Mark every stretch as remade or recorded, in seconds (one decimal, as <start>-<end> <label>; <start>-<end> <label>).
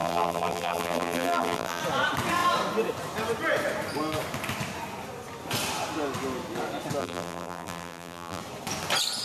0.0-1.8 remade; 1.8-7.0 recorded; 7.0-8.4 remade; 8.4-9.2 recorded